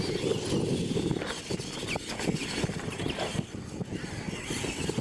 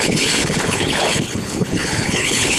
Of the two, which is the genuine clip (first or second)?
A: first